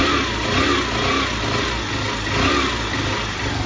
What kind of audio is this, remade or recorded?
recorded